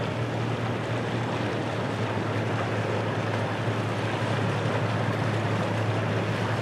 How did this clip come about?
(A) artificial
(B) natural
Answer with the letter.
B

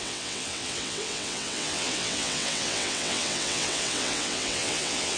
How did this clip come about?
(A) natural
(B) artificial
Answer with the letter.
B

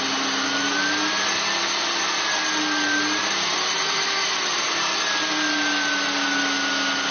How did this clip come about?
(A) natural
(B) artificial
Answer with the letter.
A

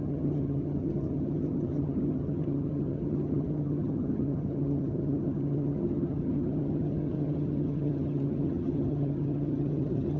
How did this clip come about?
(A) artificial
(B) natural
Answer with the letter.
A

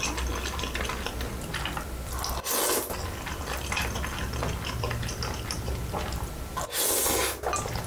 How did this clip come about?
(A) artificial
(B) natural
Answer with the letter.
B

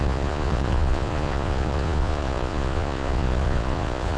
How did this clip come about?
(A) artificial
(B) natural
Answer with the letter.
A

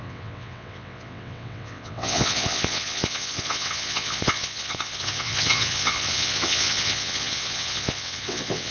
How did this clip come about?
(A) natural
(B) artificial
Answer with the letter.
B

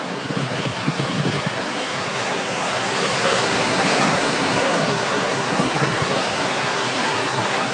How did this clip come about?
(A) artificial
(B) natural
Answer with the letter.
A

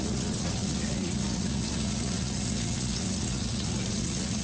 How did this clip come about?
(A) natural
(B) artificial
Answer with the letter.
B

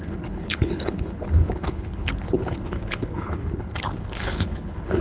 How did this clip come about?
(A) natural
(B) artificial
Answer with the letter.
B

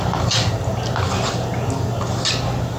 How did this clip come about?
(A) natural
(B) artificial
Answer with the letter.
A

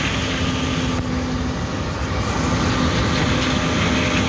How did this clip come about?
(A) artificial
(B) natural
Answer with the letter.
B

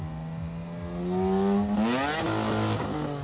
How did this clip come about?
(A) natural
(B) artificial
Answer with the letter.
A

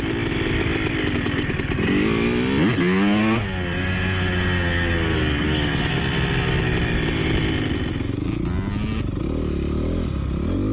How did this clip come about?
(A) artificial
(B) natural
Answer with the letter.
B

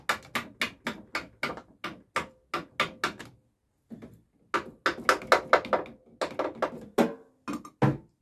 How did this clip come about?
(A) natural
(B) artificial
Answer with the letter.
A